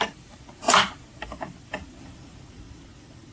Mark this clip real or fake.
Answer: real